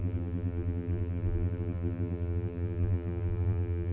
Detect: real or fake fake